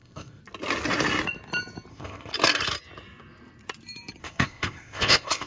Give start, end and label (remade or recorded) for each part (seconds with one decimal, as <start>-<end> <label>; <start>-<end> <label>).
0.0-0.4 remade; 0.4-1.9 recorded; 1.9-2.3 remade; 2.3-4.2 recorded; 4.2-5.5 remade